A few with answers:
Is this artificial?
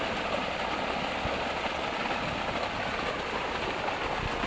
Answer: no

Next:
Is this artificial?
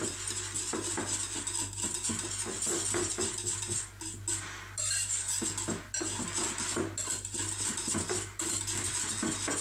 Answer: no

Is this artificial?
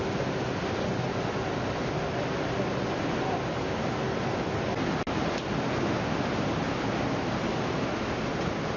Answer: no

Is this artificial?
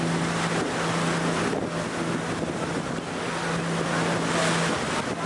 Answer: no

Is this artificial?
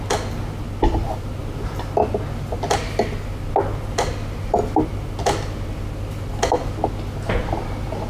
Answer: no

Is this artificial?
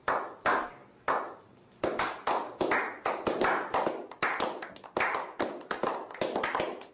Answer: no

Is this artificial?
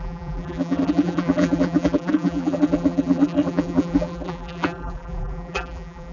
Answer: yes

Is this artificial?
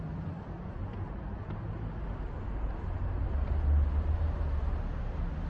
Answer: no